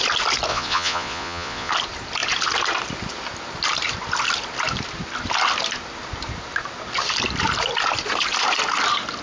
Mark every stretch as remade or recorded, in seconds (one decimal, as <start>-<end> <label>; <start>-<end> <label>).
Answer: 0.0-0.5 recorded; 0.5-1.7 remade; 1.7-9.2 recorded

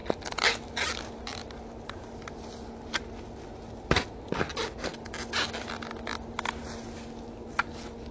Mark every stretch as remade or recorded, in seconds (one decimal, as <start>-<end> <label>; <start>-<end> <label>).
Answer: 0.0-8.1 recorded

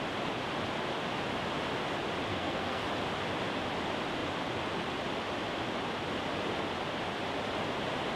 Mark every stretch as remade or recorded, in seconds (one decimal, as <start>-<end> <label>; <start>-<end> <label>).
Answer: 0.0-2.3 recorded; 2.3-2.8 remade; 2.8-8.2 recorded

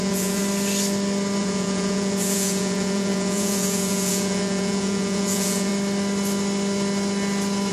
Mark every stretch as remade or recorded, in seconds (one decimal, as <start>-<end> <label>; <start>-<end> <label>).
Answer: 0.0-0.4 remade; 0.4-1.4 recorded; 1.4-5.7 remade; 5.7-7.7 recorded

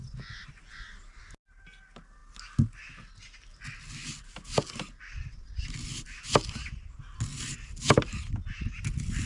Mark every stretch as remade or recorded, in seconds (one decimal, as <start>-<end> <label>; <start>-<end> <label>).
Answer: 0.0-9.3 recorded

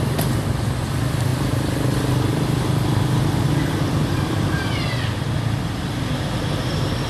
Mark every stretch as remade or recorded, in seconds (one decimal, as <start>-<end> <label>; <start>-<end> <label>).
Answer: 0.0-4.0 recorded; 4.0-4.7 remade; 4.7-7.1 recorded

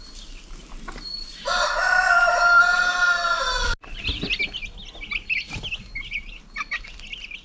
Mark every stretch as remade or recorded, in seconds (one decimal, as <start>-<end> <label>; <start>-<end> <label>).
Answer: 0.0-1.8 recorded; 1.8-2.8 remade; 2.8-7.4 recorded